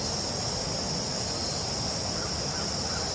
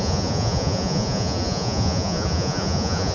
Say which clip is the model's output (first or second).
second